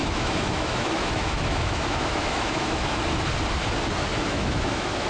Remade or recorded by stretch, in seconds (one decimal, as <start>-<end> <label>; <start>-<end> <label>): 0.0-3.0 remade; 3.0-4.1 recorded; 4.1-5.1 remade